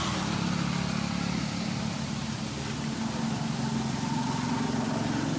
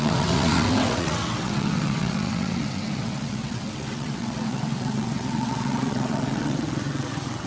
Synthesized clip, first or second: second